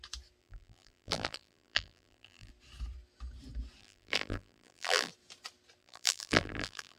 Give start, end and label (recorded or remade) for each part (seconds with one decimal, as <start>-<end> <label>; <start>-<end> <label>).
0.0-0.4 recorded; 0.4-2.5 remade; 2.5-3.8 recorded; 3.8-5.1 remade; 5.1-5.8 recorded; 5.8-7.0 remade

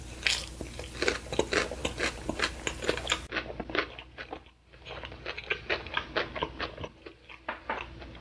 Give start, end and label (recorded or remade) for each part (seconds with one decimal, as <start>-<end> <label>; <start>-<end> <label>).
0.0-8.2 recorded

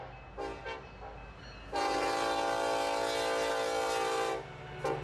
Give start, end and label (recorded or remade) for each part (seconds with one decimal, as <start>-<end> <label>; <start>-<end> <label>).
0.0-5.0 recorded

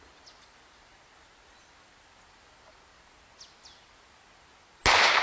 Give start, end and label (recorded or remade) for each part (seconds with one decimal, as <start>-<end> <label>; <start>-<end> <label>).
0.0-5.2 recorded